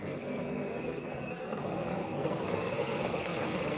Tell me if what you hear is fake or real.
fake